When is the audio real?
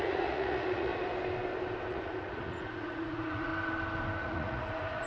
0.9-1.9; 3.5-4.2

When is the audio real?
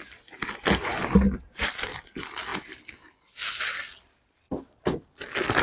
0.0-5.6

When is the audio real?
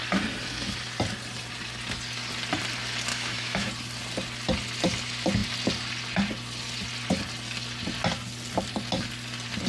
0.0-3.1; 3.7-9.7